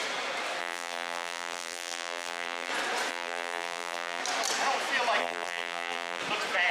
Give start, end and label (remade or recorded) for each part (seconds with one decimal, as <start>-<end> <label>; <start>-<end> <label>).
0.0-0.6 recorded; 0.6-2.7 remade; 2.7-3.1 recorded; 3.1-4.2 remade; 4.2-5.2 recorded; 5.2-6.2 remade; 6.2-6.7 recorded